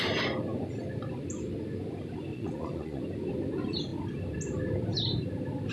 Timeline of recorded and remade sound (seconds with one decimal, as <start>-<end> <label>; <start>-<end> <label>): 0.0-2.3 recorded; 2.3-3.0 remade; 3.0-5.7 recorded